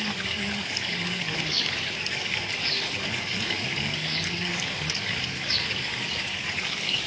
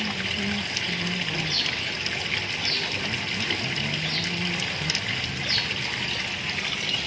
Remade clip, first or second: first